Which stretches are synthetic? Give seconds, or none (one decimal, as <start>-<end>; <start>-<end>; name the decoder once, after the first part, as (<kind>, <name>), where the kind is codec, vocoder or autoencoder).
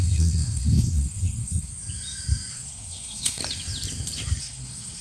0.0-1.7 (codec, SNAC); 2.5-3.4; 4.4-5.0